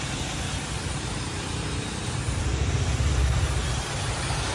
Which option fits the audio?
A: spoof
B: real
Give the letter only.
A